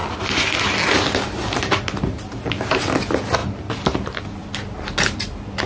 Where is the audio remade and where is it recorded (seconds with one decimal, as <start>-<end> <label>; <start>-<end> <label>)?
0.0-5.7 recorded